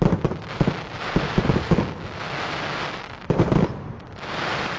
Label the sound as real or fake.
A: real